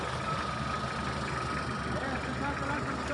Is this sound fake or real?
real